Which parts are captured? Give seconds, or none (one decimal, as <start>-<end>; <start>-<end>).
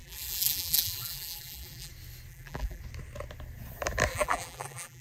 1.9-2.3; 2.8-4.1